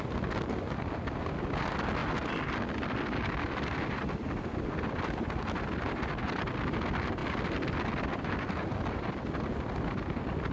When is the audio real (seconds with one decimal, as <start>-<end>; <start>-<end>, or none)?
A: 0.0-10.5